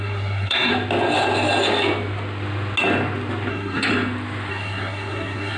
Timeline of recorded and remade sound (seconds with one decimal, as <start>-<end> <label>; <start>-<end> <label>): 0.0-0.7 remade; 0.7-3.5 recorded; 3.5-3.9 remade; 3.9-4.5 recorded; 4.5-5.6 remade